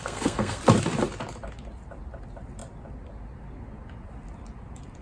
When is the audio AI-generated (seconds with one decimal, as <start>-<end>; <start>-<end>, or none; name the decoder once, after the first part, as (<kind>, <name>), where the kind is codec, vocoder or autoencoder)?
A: 0.0-0.6 (codec, SNAC)